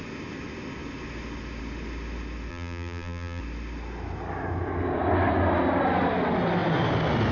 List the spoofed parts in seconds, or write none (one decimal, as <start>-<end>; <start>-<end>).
2.5-3.4